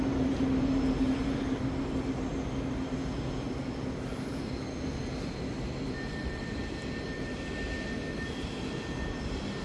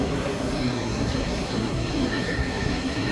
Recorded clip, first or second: first